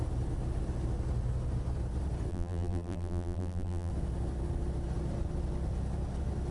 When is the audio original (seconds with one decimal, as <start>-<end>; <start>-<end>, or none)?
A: 0.0-2.3; 3.9-6.5